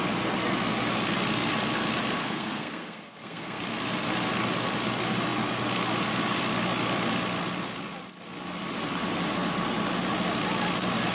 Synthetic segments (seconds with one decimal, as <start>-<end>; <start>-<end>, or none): 2.2-3.6